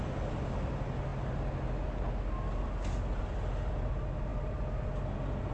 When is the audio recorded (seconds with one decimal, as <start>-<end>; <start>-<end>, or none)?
0.0-5.5